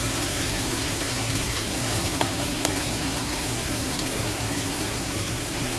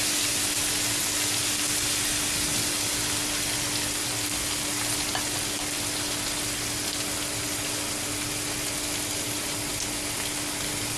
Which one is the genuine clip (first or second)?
second